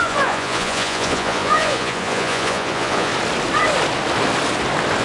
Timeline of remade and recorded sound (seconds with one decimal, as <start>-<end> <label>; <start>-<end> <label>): 0.0-3.1 remade; 3.1-5.0 recorded